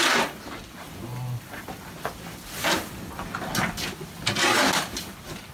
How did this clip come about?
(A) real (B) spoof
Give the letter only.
A